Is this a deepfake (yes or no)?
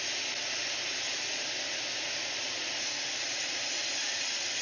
no